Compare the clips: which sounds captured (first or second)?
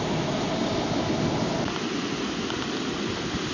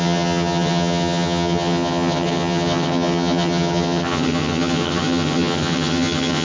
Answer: first